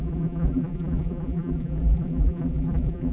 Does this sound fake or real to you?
fake